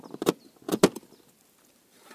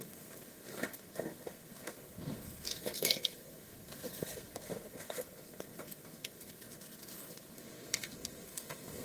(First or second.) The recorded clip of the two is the first